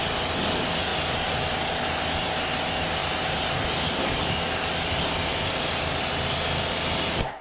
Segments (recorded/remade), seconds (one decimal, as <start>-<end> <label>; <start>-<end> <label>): 0.0-0.9 recorded; 0.9-1.5 remade; 1.5-5.3 recorded; 5.3-5.9 remade; 5.9-7.4 recorded